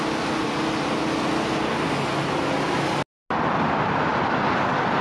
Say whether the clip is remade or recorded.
recorded